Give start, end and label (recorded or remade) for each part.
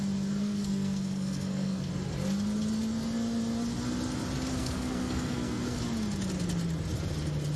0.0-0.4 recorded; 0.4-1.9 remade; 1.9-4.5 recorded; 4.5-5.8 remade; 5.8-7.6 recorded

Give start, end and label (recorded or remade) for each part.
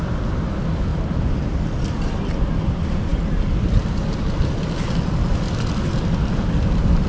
0.0-7.1 recorded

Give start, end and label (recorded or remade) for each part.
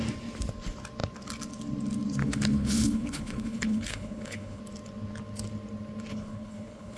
0.0-2.2 recorded; 2.2-4.6 remade; 4.6-6.1 recorded; 6.1-7.0 remade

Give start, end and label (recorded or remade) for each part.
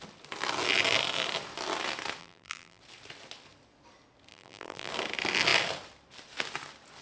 0.0-2.2 recorded; 2.2-2.8 remade; 2.8-4.3 recorded; 4.3-4.9 remade; 4.9-7.0 recorded